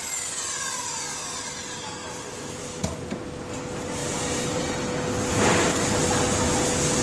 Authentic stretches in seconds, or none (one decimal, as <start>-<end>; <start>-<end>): 0.0-4.0; 4.7-7.0